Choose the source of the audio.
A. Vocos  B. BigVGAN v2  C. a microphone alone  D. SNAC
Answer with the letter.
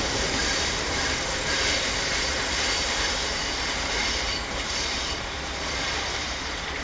B